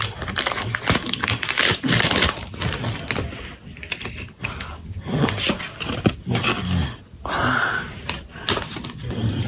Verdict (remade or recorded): recorded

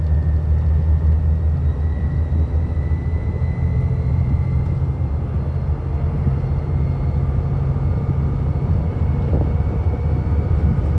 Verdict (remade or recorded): recorded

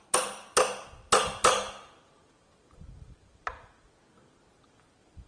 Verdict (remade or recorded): recorded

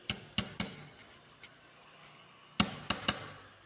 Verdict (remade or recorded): recorded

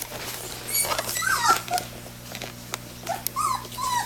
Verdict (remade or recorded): recorded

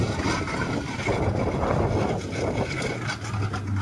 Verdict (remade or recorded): recorded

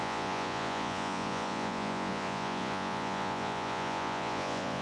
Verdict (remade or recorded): remade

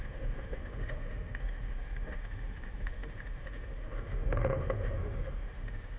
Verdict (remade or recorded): remade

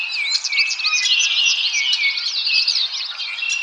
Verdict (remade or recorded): recorded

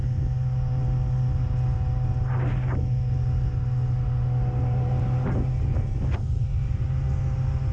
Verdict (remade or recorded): recorded